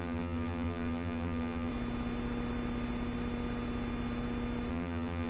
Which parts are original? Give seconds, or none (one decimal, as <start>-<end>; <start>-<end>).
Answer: 1.7-4.7